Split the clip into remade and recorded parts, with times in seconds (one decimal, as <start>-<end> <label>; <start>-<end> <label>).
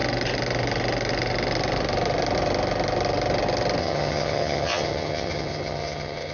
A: 0.0-3.8 recorded; 3.8-6.3 remade